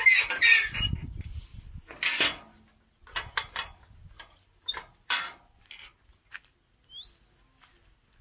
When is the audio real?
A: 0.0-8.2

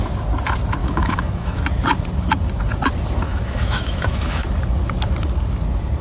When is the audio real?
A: 0.0-0.8; 1.6-3.3; 4.5-6.0

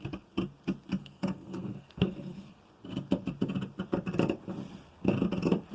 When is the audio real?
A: 0.0-1.0; 2.6-5.7